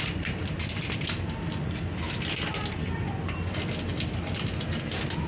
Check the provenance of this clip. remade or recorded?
recorded